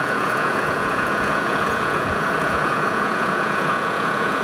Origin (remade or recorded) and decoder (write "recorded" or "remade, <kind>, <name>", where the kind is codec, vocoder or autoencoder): remade, vocoder, Vocos